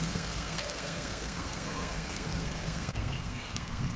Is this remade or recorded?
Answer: remade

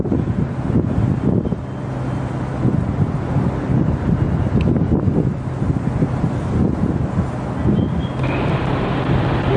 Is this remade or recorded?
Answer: recorded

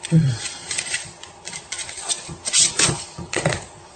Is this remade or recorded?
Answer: remade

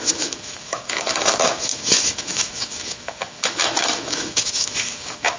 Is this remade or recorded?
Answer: remade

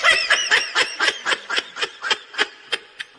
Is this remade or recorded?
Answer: remade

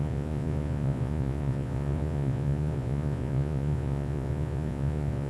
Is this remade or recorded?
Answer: remade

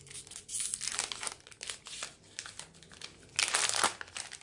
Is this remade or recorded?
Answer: recorded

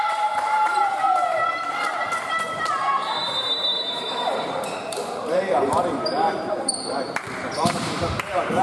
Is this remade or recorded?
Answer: remade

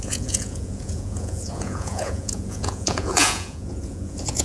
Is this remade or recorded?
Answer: remade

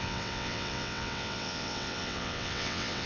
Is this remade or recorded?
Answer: remade